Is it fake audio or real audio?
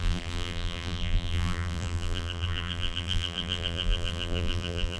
fake